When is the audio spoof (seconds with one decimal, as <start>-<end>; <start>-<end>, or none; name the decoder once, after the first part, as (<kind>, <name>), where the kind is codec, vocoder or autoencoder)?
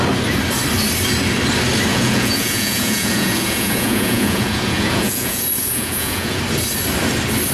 1.9-6.4 (vocoder, Vocos)